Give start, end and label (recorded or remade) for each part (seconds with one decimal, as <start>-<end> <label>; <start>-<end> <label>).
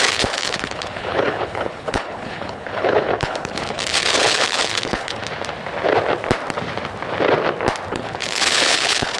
0.0-5.2 remade; 5.2-7.9 recorded; 7.9-9.2 remade